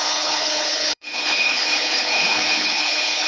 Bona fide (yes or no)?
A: no